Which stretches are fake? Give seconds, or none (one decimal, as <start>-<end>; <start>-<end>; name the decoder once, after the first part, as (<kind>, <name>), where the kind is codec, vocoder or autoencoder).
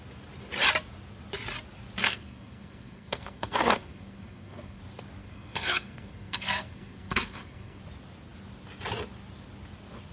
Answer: 2.0-4.8 (codec, SNAC); 5.2-7.8